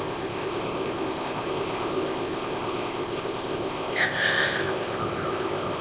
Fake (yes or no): yes